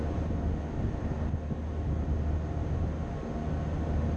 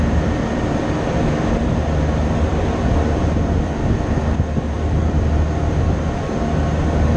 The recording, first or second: first